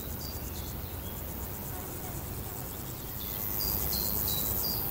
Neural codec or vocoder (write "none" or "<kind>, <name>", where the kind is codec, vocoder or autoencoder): none